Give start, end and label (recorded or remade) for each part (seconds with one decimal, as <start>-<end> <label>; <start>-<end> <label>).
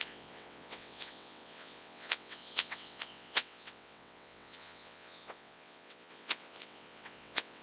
0.0-7.6 remade